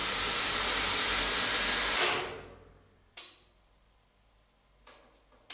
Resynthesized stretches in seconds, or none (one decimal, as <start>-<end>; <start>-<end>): 0.0-0.8